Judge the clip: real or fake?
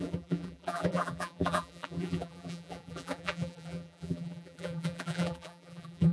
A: fake